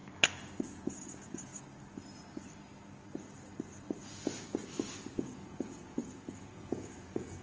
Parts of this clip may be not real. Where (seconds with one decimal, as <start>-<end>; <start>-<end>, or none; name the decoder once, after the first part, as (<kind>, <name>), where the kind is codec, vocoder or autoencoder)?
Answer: 0.6-1.5 (vocoder, Vocos); 5.1-7.4